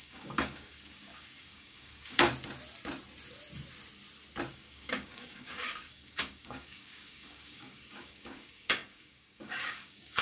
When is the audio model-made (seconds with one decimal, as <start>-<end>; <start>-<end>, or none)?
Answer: 0.0-2.3; 4.5-10.2